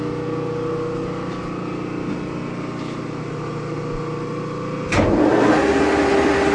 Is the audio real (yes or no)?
yes